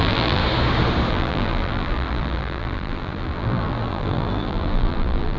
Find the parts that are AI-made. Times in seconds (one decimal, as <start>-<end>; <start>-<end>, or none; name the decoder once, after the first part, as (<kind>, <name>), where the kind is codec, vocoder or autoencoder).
0.0-0.4 (vocoder, BigVGAN v2); 1.1-5.4